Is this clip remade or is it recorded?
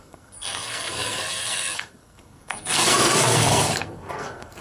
remade